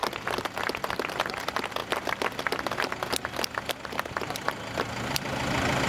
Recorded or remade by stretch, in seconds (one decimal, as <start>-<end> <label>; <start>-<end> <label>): 0.0-5.9 recorded